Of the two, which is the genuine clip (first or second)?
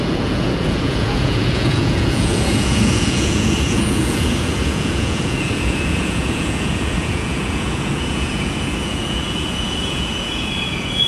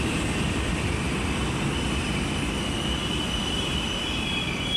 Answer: second